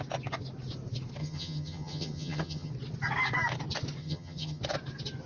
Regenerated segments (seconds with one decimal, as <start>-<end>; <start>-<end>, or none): 1.2-2.7; 4.0-4.6